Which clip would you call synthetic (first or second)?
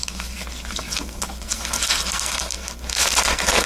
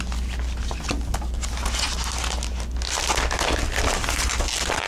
first